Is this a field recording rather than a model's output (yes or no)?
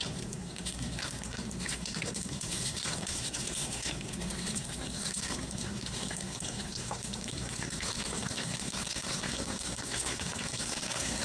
no